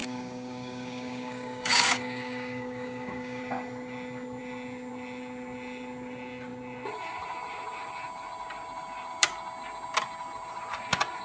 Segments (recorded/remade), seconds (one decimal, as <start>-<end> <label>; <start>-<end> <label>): 0.0-3.4 remade; 3.4-11.2 recorded